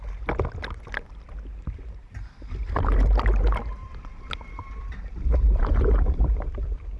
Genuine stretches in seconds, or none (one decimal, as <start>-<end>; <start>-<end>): 0.0-3.8